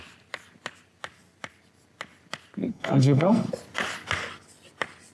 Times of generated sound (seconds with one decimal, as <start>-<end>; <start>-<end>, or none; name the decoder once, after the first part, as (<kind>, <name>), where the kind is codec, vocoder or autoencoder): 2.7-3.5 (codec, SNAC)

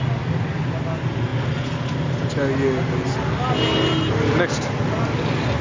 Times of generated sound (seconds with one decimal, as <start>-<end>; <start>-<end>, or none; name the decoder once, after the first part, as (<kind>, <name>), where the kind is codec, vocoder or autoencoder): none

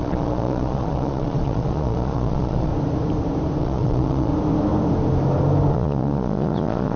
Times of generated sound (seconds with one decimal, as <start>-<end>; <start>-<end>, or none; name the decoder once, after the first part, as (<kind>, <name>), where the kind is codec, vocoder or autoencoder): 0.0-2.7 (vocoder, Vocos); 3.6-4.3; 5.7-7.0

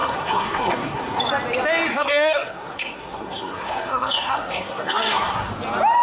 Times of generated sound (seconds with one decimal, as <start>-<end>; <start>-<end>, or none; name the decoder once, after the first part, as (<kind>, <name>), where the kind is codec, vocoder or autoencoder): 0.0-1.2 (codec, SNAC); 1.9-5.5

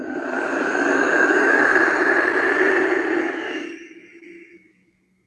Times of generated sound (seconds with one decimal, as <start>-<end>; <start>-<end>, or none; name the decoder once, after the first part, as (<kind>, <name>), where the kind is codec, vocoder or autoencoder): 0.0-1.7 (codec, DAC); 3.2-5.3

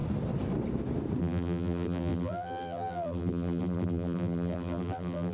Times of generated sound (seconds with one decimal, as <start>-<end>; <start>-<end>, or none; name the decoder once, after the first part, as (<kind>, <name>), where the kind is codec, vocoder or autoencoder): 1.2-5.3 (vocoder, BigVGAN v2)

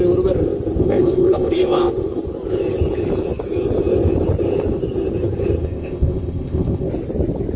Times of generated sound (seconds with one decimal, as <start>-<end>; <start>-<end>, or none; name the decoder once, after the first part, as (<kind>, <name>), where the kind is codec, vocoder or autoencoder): 0.8-1.9 (codec, ZipCodec); 5.6-6.9

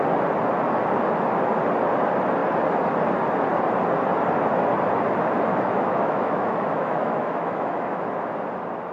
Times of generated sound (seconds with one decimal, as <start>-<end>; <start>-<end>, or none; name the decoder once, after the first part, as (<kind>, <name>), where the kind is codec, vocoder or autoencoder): 5.5-8.1 (autoencoder, DAC-VAE)